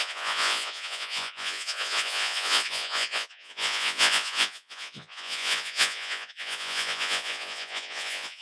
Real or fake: fake